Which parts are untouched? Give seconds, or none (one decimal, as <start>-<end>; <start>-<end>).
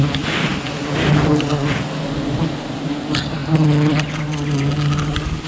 0.0-5.5